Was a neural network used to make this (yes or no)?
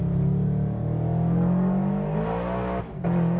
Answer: no